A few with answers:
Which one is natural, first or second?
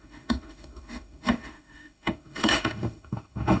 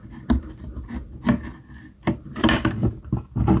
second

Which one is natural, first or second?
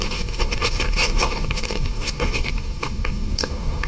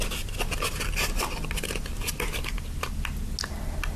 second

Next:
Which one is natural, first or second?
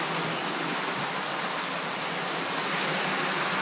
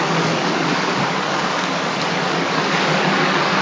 first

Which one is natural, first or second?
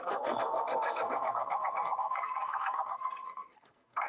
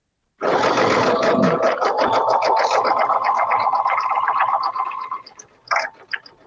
second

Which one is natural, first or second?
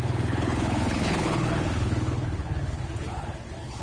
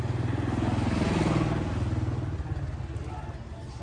second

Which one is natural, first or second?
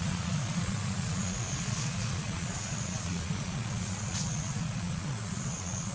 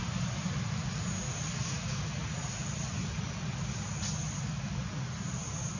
second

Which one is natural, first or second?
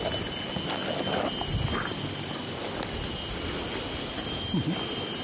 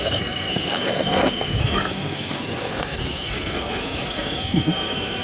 first